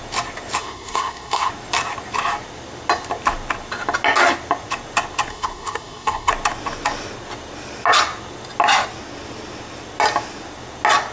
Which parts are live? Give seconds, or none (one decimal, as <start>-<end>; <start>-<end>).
0.0-0.6; 1.5-5.3; 6.3-11.1